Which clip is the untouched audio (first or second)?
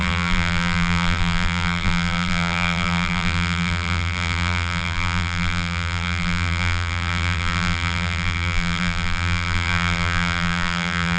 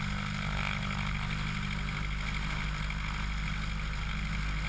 second